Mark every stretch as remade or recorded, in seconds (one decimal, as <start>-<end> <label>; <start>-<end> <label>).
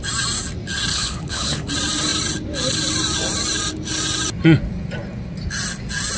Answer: 0.0-0.9 recorded; 0.9-1.7 remade; 1.7-6.2 recorded